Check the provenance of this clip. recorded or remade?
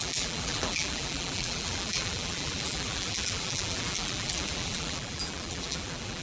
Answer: remade